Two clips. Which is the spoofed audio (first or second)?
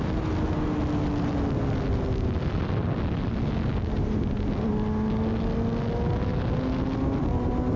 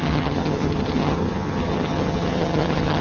second